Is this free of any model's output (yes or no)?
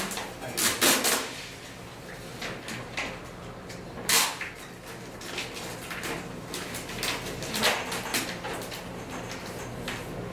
yes